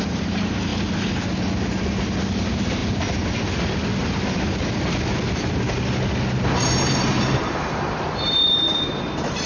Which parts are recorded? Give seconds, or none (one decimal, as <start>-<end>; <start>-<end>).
0.7-2.4; 2.8-6.5